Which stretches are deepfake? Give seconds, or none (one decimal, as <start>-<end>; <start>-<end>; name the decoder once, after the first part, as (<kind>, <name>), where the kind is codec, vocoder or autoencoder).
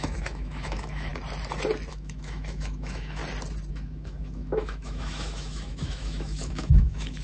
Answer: 0.0-1.1 (autoencoder, DAC-VAE); 1.9-3.2; 3.7-7.2